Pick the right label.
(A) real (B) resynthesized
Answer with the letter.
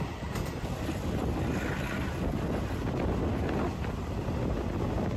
A